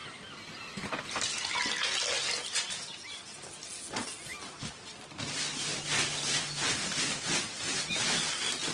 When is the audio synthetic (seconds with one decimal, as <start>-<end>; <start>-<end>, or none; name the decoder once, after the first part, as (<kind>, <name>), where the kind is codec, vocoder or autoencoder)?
0.0-0.9 (vocoder, BigVGAN v2); 2.4-3.6; 4.3-7.2